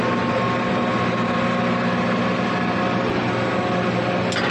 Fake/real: real